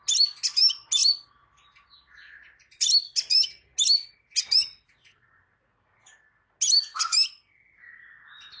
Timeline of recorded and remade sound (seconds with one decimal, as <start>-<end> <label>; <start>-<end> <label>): 0.0-8.6 recorded